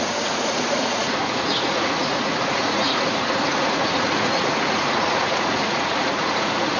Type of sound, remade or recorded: remade